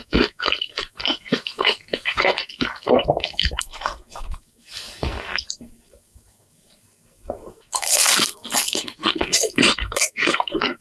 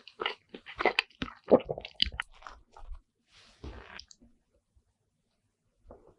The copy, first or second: first